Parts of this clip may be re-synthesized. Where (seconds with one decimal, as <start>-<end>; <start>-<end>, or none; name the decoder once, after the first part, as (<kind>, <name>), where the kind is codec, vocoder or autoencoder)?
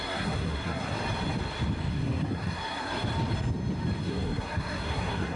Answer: 0.0-1.0 (codec, SNAC); 1.9-3.1; 4.0-5.4